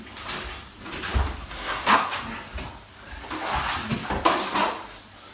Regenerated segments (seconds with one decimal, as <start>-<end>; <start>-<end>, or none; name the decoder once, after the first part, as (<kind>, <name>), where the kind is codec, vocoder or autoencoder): 1.4-2.1 (codec, SNAC)

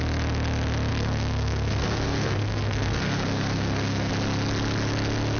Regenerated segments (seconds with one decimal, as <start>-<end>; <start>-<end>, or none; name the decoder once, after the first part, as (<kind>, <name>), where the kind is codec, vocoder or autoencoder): 0.9-4.1 (codec, SNAC)

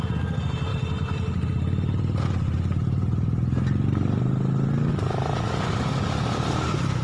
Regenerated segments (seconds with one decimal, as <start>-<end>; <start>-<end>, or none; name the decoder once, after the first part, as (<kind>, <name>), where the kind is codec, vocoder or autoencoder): none

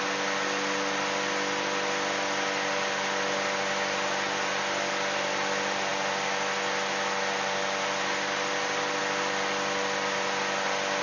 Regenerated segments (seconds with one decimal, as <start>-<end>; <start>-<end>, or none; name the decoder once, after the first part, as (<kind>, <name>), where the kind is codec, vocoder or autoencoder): none

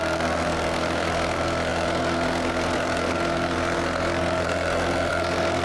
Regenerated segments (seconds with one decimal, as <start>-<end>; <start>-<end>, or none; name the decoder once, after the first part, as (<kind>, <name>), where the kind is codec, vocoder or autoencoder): 0.0-5.6 (codec, SNAC)